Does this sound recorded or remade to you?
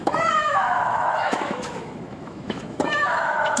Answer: remade